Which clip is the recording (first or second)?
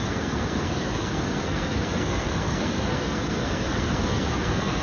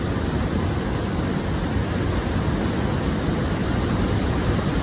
second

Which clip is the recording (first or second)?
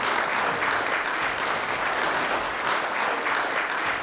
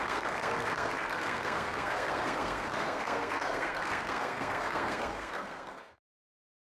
first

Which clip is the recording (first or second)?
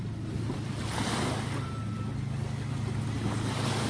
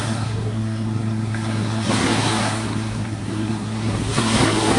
first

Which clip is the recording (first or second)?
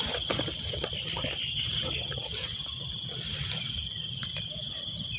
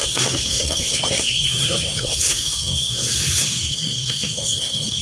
first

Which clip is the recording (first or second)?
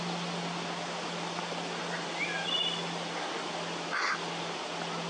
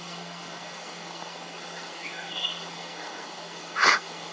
first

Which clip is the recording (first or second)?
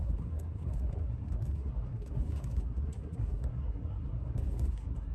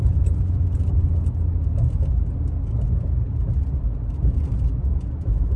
second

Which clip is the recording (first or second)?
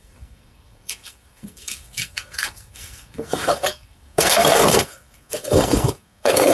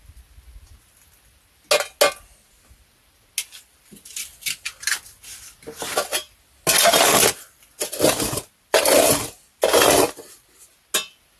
second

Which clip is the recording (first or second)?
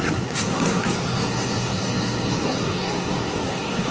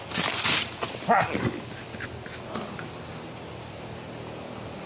second